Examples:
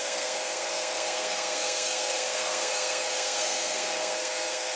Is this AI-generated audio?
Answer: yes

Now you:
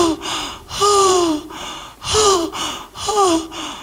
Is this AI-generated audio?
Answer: yes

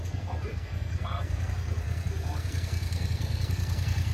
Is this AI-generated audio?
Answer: yes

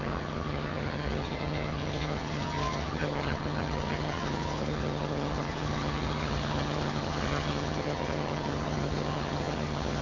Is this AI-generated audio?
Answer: yes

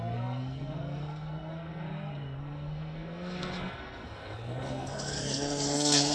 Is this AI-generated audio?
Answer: yes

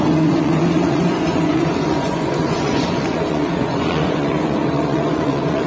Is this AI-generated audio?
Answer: yes